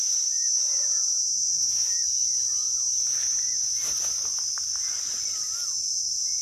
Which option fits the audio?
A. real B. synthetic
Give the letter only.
A